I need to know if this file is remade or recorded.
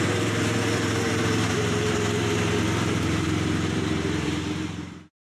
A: remade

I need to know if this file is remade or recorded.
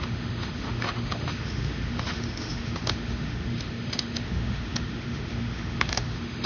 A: remade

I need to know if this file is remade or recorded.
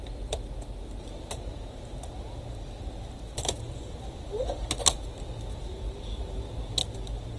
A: recorded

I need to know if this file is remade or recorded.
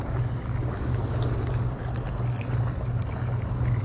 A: recorded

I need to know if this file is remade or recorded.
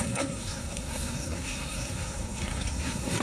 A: remade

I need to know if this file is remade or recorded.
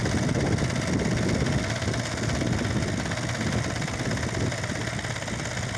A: recorded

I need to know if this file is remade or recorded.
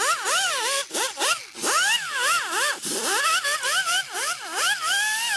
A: recorded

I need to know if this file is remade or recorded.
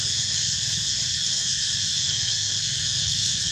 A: remade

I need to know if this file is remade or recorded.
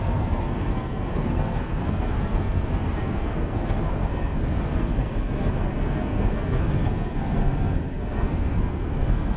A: remade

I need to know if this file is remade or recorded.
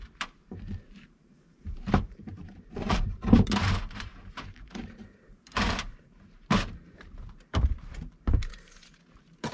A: remade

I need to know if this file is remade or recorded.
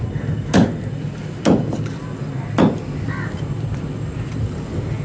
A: recorded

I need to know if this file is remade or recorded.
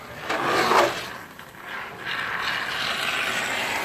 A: recorded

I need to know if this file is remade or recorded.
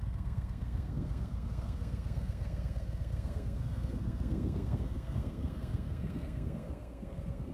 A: remade